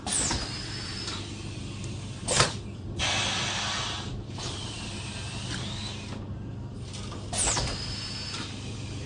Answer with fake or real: fake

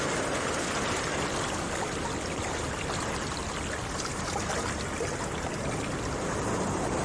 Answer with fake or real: real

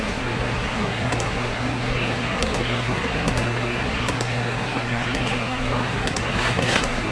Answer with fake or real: fake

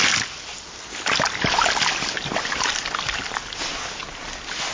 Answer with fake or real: real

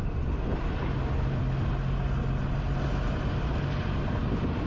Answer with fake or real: real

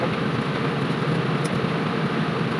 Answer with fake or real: real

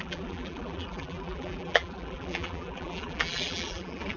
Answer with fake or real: fake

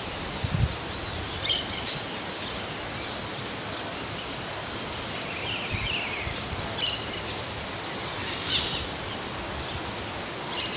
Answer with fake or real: real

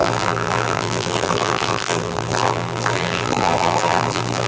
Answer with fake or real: fake